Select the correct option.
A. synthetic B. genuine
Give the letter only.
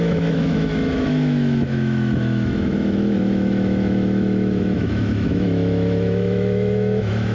A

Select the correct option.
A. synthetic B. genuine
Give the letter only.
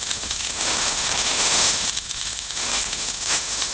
A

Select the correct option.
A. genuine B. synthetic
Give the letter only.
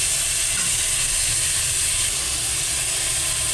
A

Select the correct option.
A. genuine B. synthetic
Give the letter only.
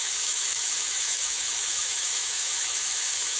B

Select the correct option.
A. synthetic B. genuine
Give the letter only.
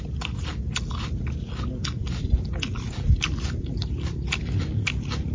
B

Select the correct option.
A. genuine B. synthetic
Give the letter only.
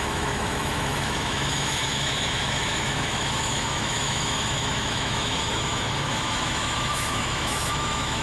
B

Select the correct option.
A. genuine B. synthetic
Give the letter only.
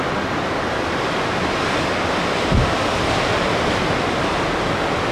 A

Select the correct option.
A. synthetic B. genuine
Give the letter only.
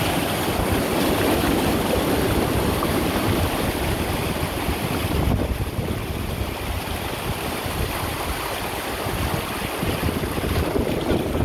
B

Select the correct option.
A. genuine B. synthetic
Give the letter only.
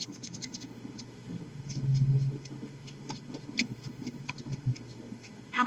B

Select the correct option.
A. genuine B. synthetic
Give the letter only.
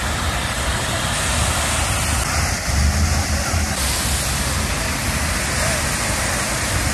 A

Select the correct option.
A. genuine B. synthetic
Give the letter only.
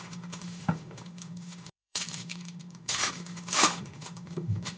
B